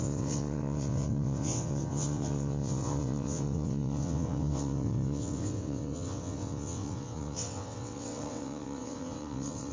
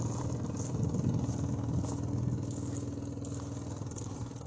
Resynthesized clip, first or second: first